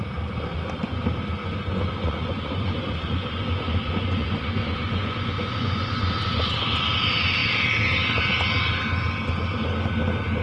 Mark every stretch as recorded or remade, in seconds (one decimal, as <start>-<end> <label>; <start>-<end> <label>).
0.0-1.4 recorded; 1.4-6.1 remade; 6.1-10.4 recorded